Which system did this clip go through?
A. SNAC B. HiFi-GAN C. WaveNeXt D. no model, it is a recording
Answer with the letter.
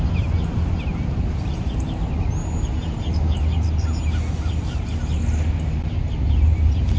D